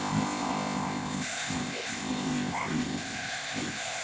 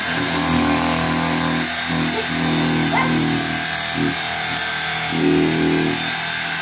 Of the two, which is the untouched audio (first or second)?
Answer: second